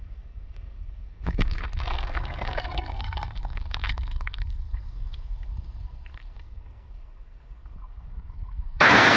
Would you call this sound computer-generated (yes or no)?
yes